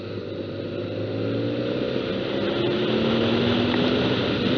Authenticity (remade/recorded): recorded